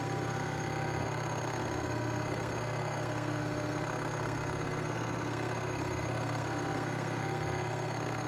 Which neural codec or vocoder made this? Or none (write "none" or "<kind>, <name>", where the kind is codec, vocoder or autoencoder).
codec, SNAC